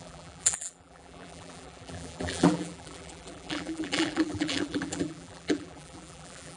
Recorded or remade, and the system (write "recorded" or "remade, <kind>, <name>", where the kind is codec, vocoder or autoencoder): remade, vocoder, BigVGAN v2